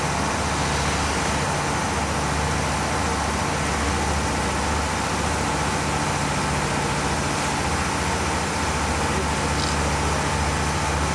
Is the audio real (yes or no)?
yes